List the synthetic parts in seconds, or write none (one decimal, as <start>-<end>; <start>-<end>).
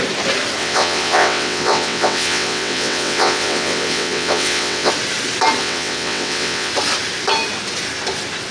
0.6-4.9; 5.6-6.7